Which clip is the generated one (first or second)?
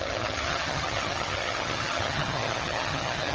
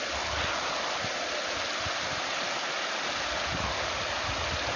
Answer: first